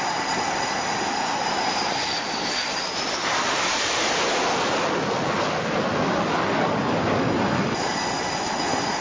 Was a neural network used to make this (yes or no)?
no